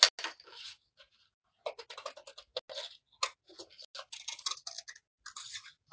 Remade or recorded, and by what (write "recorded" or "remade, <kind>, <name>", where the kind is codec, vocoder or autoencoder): recorded